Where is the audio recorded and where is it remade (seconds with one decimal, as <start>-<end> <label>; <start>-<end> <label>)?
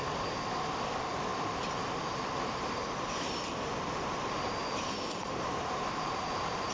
0.0-4.6 recorded; 4.6-5.3 remade; 5.3-6.7 recorded